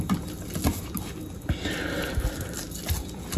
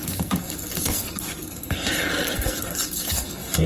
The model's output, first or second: second